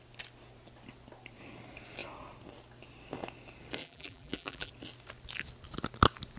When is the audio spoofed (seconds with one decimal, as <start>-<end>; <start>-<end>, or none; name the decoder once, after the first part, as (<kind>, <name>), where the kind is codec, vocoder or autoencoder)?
3.8-4.7 (vocoder, BigVGAN v2)